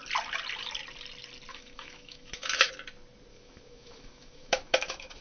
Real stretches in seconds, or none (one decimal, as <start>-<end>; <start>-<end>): 0.0-1.5; 2.7-3.3